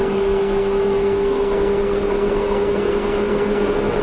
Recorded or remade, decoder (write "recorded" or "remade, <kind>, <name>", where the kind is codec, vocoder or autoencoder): remade, codec, SNAC